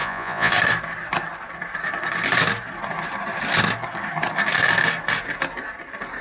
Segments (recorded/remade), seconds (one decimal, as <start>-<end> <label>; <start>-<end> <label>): 0.0-0.5 remade; 0.5-6.2 recorded